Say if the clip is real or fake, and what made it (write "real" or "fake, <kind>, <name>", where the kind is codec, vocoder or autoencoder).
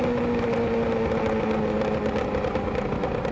real